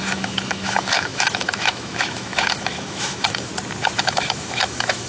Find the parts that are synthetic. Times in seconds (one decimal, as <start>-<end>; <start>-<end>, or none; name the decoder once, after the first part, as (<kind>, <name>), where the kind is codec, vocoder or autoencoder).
0.0-3.5 (autoencoder, DAC-VAE); 4.0-5.1